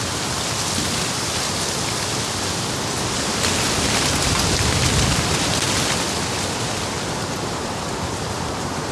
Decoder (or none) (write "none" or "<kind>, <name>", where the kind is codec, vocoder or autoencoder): none